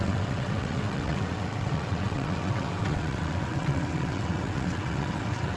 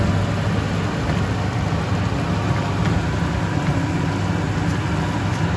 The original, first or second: second